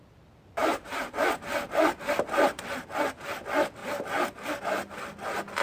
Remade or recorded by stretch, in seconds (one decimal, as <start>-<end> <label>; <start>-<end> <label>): 0.0-0.6 recorded; 0.6-3.0 remade; 3.0-3.8 recorded; 3.8-4.6 remade; 4.6-5.6 recorded

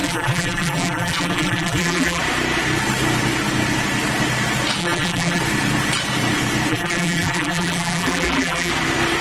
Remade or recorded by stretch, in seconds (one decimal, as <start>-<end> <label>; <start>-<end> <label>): 0.0-2.2 remade; 2.2-4.8 recorded; 4.8-5.4 remade; 5.4-6.7 recorded; 6.7-8.7 remade; 8.7-9.2 recorded

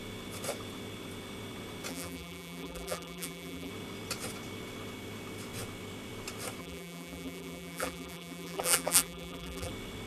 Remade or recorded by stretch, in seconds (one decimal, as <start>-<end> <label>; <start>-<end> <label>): 0.0-1.9 recorded; 1.9-3.7 remade; 3.7-6.6 recorded; 6.6-9.7 remade; 9.7-10.1 recorded

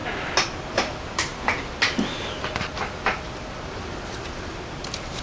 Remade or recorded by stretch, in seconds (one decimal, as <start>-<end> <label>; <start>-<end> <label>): 0.0-0.7 recorded; 0.7-1.3 remade; 1.3-2.9 recorded; 2.9-5.2 remade

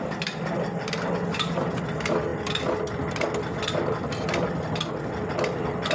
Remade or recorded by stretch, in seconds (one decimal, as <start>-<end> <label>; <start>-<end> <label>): 0.0-5.9 recorded